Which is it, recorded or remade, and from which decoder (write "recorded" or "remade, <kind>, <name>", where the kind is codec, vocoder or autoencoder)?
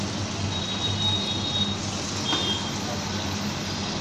recorded